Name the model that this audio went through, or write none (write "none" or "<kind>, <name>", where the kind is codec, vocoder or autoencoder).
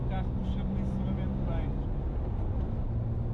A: none